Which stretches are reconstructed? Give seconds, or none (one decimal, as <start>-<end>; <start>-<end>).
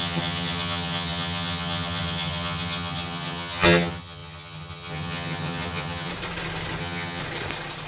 0.0-6.1; 6.8-7.2